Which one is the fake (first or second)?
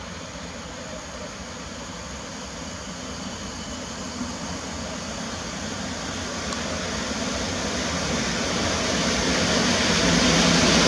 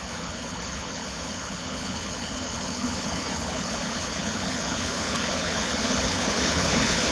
second